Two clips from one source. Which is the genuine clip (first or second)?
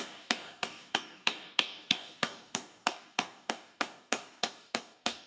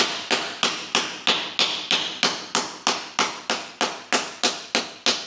second